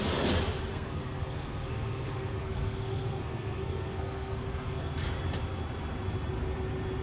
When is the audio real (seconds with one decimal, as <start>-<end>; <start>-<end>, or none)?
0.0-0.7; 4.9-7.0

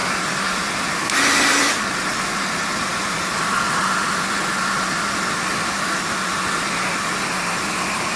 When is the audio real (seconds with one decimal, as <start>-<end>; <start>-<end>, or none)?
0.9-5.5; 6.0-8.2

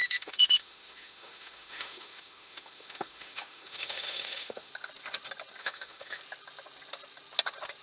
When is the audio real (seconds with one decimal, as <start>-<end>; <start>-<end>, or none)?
4.7-5.6; 6.2-7.8

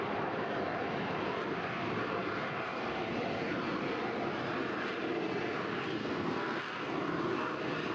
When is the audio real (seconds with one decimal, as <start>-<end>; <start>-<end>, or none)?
0.0-6.0; 6.6-7.9

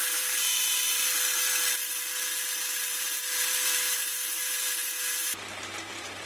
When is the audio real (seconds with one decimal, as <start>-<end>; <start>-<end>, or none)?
1.1-2.7